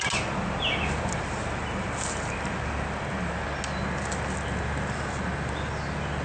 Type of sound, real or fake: real